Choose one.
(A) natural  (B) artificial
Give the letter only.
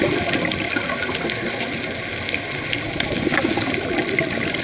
A